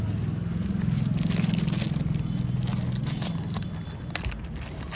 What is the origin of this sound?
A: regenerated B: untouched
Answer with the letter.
B